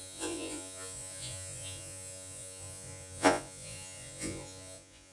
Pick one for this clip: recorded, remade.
remade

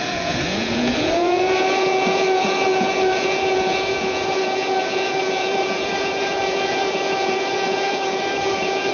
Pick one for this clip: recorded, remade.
remade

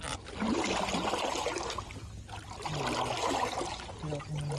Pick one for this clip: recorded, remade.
recorded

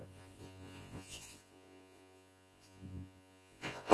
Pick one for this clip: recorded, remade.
remade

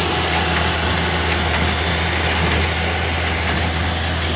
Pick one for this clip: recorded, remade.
recorded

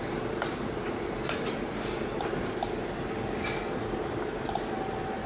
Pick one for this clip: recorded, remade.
recorded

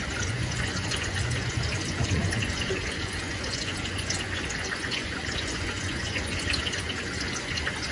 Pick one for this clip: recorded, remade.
remade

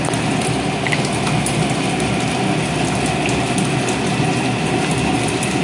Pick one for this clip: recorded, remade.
recorded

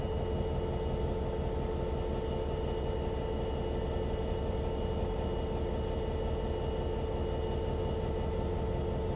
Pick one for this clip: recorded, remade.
recorded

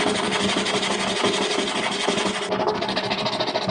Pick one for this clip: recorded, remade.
recorded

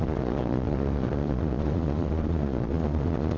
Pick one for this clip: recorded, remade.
remade